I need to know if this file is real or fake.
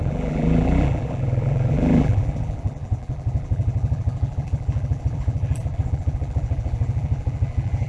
fake